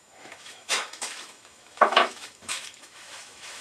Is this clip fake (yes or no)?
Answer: yes